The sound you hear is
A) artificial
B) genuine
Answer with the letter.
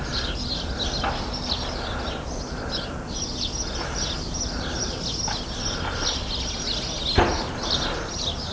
B